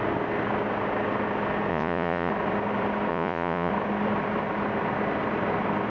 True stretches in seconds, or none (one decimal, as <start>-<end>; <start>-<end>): 0.0-1.7; 2.3-3.1; 3.7-5.9